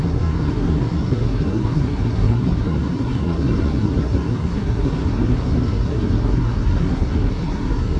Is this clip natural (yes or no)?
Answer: no